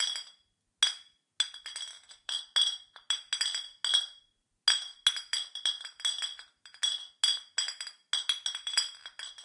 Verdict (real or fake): real